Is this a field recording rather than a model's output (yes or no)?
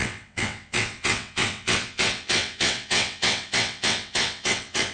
no